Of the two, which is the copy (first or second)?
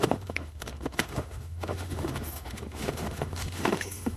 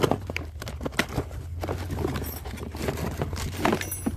first